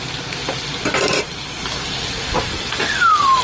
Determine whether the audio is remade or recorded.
recorded